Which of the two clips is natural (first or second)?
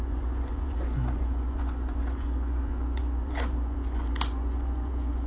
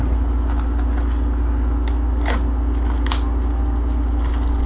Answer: second